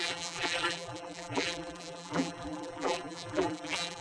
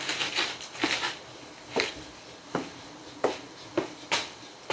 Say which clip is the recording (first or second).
second